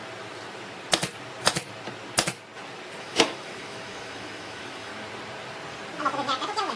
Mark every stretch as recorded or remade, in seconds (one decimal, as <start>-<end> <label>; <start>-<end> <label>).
0.0-3.0 recorded; 3.0-4.9 remade; 4.9-6.0 recorded; 6.0-6.8 remade